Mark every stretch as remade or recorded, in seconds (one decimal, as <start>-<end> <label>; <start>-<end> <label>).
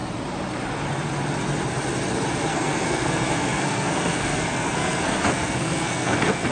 0.0-2.5 recorded; 2.5-6.5 remade